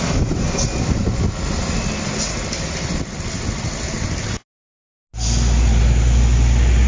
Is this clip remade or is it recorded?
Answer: recorded